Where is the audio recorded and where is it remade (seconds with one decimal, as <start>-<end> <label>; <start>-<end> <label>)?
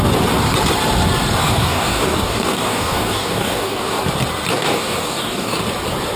0.0-1.4 recorded; 1.4-4.0 remade; 4.0-4.5 recorded; 4.5-5.6 remade; 5.6-6.2 recorded